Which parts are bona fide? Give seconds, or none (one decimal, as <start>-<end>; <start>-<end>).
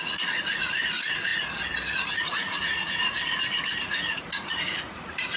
1.3-2.2; 3.0-3.8